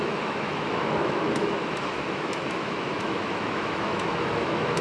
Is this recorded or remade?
remade